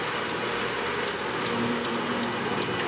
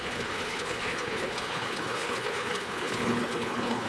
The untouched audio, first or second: first